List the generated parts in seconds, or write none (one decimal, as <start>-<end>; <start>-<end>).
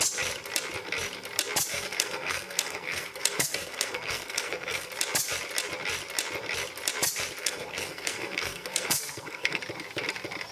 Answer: 1.7-4.9; 7.4-9.6